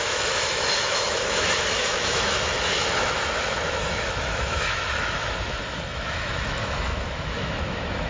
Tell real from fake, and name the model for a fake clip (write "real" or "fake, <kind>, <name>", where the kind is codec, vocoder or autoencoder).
fake, autoencoder, DAC-VAE